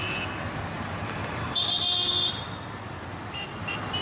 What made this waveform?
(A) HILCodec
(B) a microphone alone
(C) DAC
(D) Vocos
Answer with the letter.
B